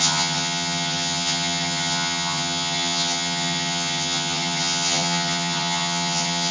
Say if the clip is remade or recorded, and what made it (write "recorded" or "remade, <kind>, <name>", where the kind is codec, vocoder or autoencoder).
remade, vocoder, HiFi-GAN